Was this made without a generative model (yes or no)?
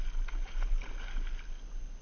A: yes